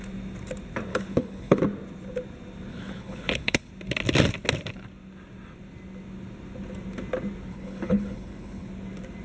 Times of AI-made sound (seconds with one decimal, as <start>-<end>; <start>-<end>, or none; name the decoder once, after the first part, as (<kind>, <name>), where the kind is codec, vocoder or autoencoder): 0.9-1.6 (codec, HILCodec); 2.7-3.7; 7.5-8.7